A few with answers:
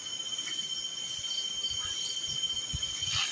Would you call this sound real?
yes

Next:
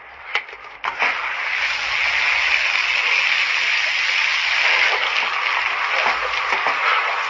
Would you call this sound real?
yes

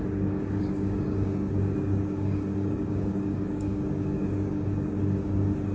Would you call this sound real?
no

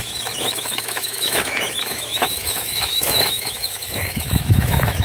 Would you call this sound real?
no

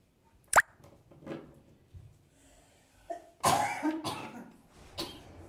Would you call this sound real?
no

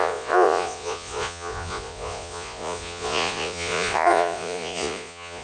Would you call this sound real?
no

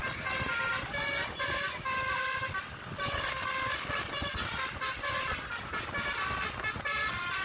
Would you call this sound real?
yes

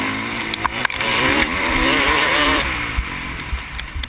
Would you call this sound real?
no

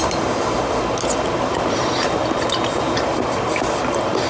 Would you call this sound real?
yes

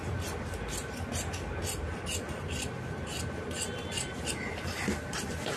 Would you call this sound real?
yes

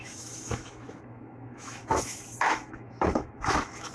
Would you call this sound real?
no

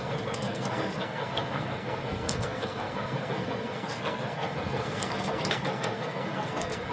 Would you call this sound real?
no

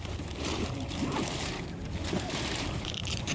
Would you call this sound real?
no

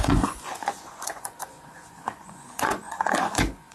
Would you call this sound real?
no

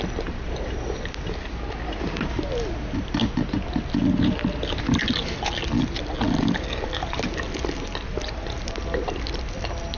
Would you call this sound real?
yes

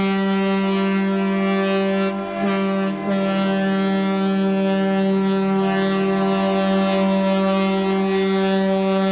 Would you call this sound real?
yes